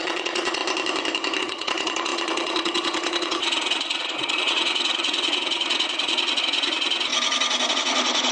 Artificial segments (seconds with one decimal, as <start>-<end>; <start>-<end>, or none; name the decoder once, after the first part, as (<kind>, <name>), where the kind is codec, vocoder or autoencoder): 0.0-0.6 (vocoder, Vocos); 1.4-7.1; 7.7-8.3